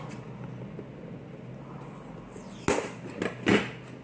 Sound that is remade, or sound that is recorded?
recorded